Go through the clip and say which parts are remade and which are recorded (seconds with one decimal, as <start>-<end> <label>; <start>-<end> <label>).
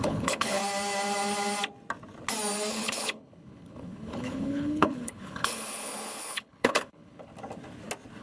0.0-0.6 remade; 0.6-2.7 recorded; 2.7-7.3 remade; 7.3-8.2 recorded